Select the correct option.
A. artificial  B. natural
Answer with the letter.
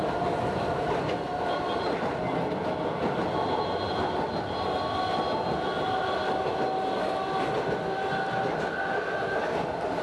B